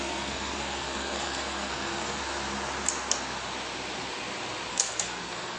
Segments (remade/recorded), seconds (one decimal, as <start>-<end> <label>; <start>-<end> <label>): 0.0-2.2 remade; 2.2-4.7 recorded; 4.7-5.6 remade